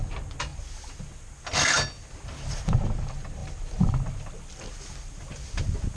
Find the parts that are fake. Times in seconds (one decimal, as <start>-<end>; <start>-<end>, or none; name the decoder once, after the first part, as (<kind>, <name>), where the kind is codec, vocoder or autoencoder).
3.4-3.9 (vocoder, BigVGAN v2)